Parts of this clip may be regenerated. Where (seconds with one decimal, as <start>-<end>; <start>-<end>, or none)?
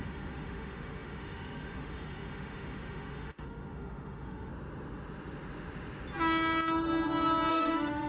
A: 0.0-4.5; 7.5-8.1